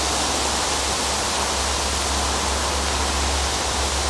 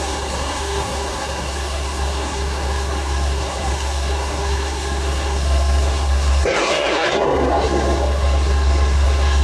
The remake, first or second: second